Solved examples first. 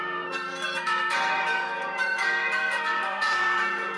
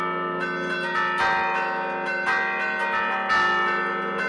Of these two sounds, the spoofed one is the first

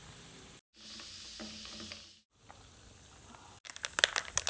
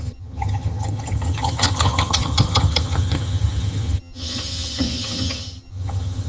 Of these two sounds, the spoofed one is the second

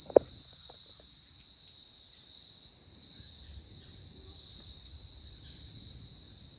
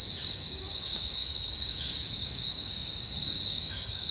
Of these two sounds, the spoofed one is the second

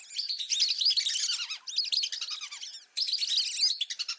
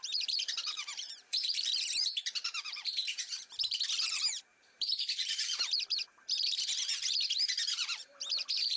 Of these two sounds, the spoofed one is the second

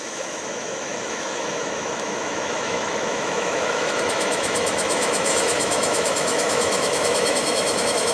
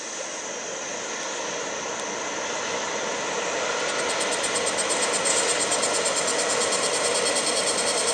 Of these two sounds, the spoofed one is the first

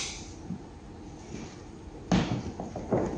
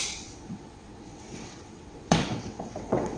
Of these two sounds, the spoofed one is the second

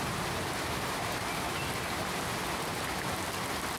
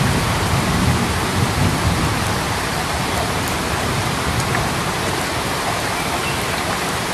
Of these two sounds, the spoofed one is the second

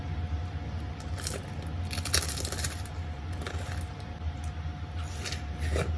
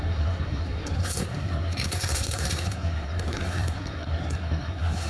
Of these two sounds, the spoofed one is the second